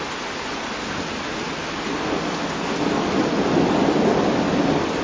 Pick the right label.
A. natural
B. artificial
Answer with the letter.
A